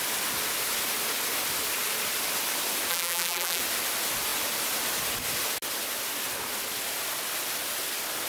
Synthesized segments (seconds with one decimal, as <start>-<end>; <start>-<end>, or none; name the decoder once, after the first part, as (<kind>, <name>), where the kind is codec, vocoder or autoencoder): 2.9-3.6 (vocoder, BigVGAN v2)